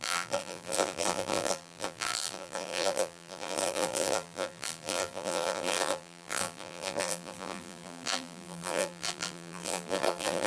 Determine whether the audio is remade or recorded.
remade